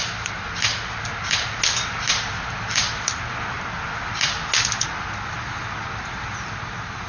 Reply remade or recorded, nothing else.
recorded